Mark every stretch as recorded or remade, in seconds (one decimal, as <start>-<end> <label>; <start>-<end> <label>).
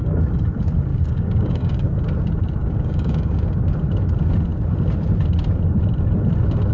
0.0-0.9 recorded; 0.9-1.8 remade; 1.8-2.6 recorded; 2.6-3.4 remade; 3.4-6.7 recorded